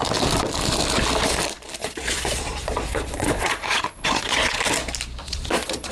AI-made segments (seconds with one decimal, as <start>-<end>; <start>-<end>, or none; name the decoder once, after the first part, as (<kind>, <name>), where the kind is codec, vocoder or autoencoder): 1.8-4.6 (vocoder, Vocos); 5.2-5.9

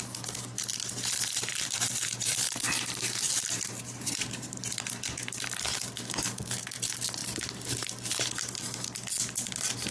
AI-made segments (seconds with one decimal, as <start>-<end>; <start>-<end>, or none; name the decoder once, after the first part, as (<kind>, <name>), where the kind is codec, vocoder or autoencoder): 1.5-4.7 (vocoder, BigVGAN v2)